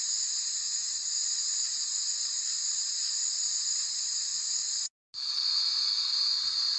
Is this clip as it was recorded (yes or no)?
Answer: yes